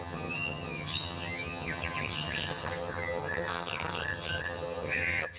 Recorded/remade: remade